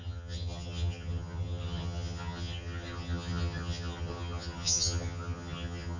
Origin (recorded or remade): remade